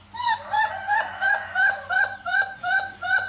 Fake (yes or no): yes